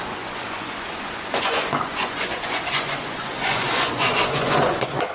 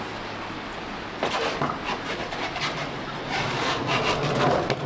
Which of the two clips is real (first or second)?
second